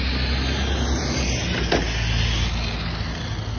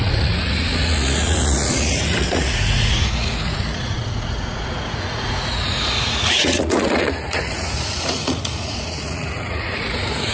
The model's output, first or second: second